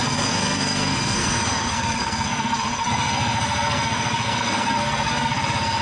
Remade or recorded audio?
remade